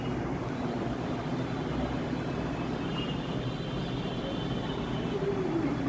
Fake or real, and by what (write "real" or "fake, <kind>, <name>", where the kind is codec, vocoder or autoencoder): real